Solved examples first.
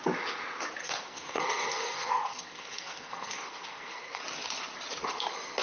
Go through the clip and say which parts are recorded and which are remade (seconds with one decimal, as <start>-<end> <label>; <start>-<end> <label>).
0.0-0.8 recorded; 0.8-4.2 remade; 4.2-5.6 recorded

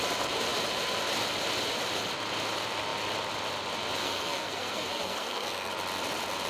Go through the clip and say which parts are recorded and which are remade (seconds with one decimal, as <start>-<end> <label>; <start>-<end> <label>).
0.0-4.0 recorded; 4.0-5.7 remade; 5.7-6.5 recorded

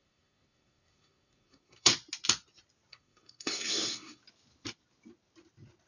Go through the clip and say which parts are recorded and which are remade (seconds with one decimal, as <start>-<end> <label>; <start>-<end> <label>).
0.0-1.9 remade; 1.9-2.9 recorded; 2.9-4.2 remade; 4.2-5.9 recorded

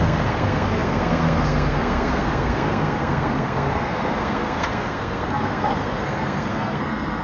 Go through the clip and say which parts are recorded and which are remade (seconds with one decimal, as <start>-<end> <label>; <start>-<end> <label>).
0.0-7.2 remade

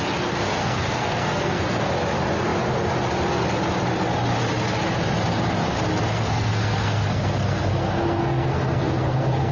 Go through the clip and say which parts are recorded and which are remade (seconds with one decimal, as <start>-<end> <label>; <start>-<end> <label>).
0.0-0.6 recorded; 0.6-1.9 remade; 1.9-6.1 recorded; 6.1-9.5 remade

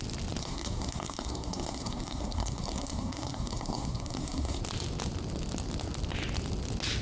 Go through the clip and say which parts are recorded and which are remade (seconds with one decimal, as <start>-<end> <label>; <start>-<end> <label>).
0.0-0.4 recorded; 0.4-4.6 remade; 4.6-7.0 recorded